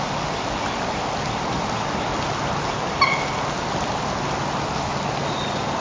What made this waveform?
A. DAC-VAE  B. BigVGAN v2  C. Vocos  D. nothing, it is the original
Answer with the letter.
D